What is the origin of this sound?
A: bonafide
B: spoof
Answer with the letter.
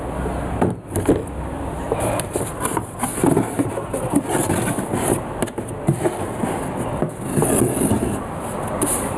A